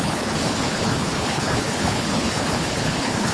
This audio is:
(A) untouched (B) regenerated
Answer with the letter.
B